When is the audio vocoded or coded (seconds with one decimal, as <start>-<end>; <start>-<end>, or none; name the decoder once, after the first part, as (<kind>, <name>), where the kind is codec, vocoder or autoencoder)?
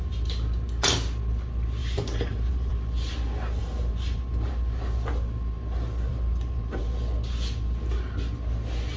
1.8-2.7 (vocoder, BigVGAN v2); 3.6-4.5; 6.1-6.8